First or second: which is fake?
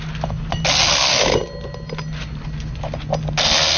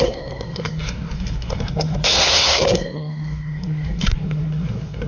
second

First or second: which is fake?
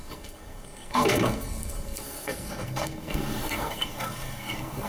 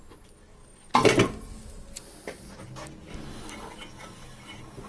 first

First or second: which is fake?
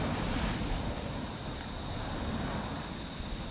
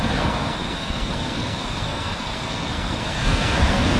second